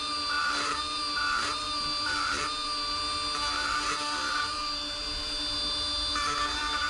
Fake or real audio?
fake